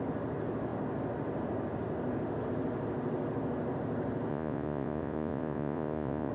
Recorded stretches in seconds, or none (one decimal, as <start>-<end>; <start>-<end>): 0.0-4.3